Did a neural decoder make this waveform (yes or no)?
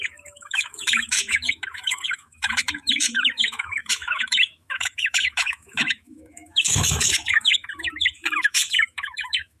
yes